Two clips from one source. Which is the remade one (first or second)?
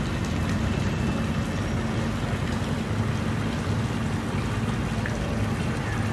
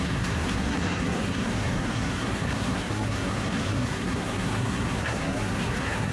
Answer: second